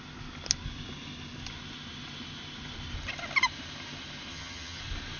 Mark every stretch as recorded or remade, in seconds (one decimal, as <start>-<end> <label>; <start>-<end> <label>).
0.0-4.3 recorded; 4.3-4.8 remade; 4.8-5.2 recorded